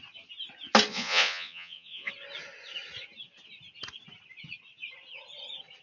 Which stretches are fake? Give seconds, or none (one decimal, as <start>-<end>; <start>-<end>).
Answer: 0.9-2.1